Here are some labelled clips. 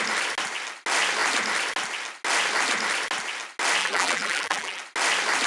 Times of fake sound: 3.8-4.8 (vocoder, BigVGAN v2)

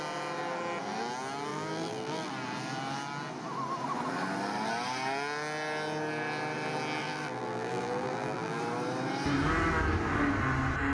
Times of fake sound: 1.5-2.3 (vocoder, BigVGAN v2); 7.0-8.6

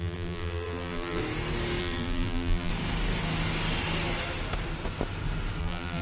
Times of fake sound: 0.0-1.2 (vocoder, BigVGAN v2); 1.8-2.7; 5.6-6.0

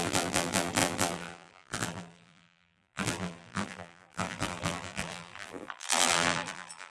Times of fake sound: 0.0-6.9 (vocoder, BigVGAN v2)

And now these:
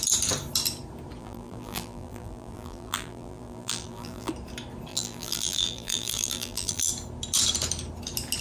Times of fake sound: 1.2-4.3 (vocoder, BigVGAN v2); 4.9-6.9

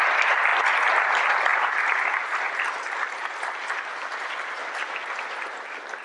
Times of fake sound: 0.0-0.5 (vocoder, BigVGAN v2); 1.0-1.5; 5.1-6.0